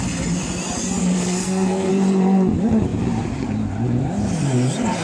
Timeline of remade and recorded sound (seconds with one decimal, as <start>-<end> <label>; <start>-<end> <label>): 0.0-1.0 recorded; 1.0-1.9 remade; 1.9-5.0 recorded

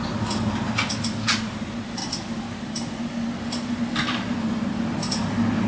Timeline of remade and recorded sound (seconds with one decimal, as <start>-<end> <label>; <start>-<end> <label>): 0.0-5.7 recorded

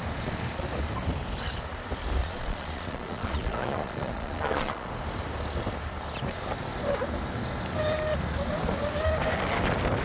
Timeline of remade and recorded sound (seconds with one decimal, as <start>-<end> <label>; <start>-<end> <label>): 0.0-2.2 recorded; 2.2-4.9 remade; 4.9-10.0 recorded

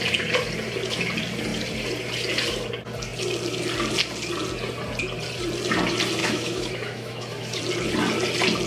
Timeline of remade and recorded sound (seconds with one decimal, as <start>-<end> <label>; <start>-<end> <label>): 0.0-6.2 recorded; 6.2-7.6 remade; 7.6-8.7 recorded

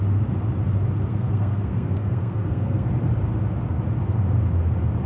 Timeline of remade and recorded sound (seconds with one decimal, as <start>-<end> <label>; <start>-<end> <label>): 0.0-1.1 recorded; 1.1-2.9 remade; 2.9-5.1 recorded

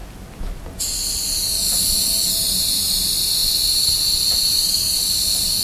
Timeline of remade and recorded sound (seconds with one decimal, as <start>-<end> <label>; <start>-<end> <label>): 0.0-2.3 recorded; 2.3-3.4 remade; 3.4-3.9 recorded; 3.9-5.6 remade

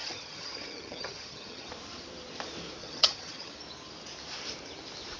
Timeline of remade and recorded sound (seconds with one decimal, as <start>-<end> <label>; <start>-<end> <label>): 0.0-1.7 remade; 1.7-2.8 recorded; 2.8-3.5 remade; 3.5-5.2 recorded